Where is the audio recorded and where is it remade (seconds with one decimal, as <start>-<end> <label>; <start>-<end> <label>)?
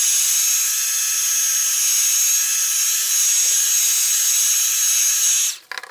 0.0-5.9 recorded